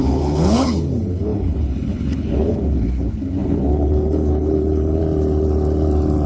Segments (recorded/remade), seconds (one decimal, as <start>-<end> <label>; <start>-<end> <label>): 0.0-5.0 remade; 5.0-6.3 recorded